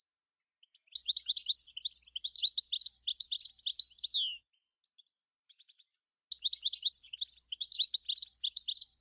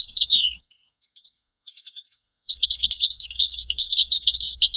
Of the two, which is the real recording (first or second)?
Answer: first